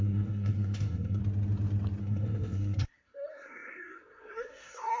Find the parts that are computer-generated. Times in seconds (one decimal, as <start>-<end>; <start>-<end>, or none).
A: 0.0-1.2; 2.0-5.0